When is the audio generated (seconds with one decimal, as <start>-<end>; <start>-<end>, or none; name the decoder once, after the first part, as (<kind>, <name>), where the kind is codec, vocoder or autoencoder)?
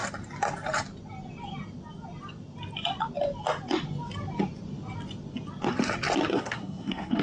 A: 6.3-7.2 (codec, SNAC)